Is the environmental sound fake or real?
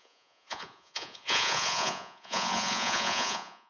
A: fake